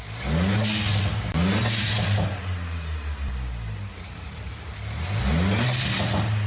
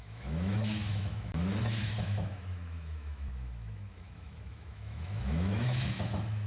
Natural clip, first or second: first